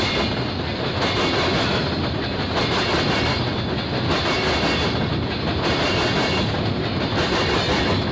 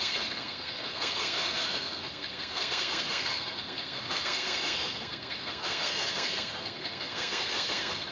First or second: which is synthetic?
second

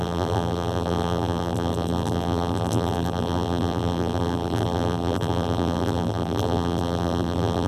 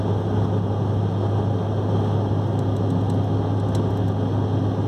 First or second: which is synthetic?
first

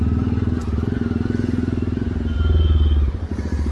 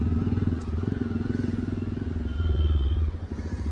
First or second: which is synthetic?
second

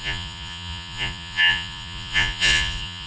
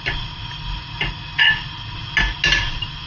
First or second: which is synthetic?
first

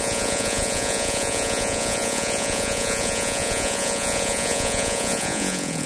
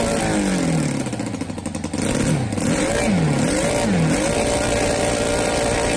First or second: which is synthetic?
first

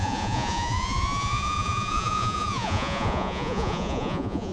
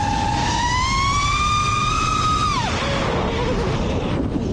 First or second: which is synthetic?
first